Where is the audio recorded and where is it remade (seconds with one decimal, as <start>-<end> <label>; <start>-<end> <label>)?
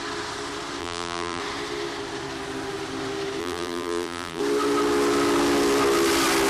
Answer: 0.0-0.8 recorded; 0.8-1.4 remade; 1.4-3.4 recorded; 3.4-4.4 remade; 4.4-6.5 recorded